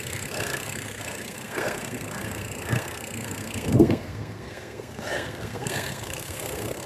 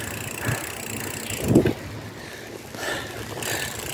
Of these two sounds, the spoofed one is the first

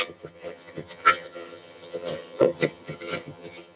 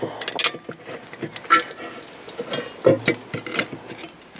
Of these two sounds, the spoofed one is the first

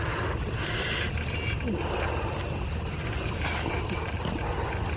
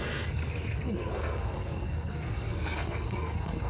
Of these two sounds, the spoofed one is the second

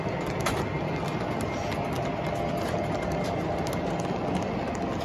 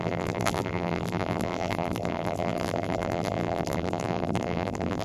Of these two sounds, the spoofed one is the second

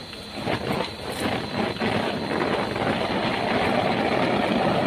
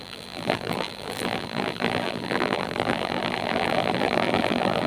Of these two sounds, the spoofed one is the second